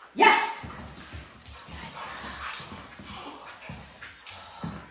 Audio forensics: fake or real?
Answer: real